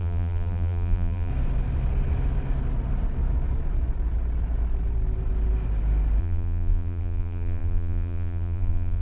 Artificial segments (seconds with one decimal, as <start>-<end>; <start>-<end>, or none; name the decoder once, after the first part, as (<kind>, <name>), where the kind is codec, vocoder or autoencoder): 0.0-1.3 (vocoder, BigVGAN v2); 6.2-9.0